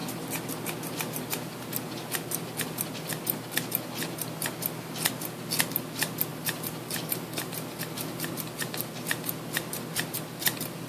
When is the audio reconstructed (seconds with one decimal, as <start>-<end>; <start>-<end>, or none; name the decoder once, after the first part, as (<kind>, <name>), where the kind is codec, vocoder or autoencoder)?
6.3-8.3 (vocoder, BigVGAN v2)